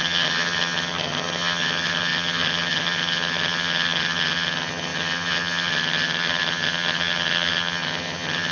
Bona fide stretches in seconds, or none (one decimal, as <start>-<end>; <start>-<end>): none